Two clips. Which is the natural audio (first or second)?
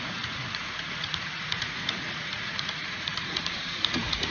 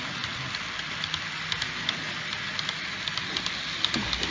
second